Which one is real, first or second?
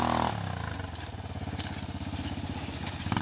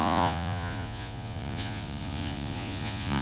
first